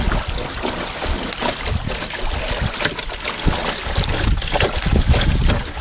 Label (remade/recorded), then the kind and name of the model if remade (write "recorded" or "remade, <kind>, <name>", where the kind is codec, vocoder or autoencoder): recorded